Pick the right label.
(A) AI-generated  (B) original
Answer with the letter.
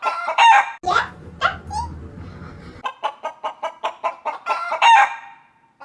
B